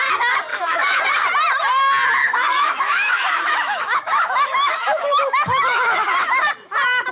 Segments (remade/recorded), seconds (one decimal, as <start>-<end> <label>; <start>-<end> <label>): 0.0-0.5 recorded; 0.5-1.0 remade; 1.0-2.2 recorded; 2.2-6.5 remade; 6.5-7.1 recorded